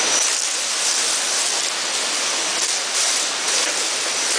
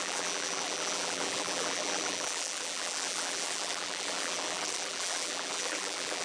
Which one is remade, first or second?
second